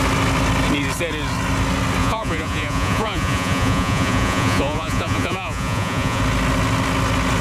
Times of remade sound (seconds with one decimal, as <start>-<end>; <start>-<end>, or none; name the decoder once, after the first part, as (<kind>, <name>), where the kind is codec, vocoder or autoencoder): 2.0-6.2 (vocoder, Vocos)